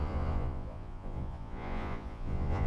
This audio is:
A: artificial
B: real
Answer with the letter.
A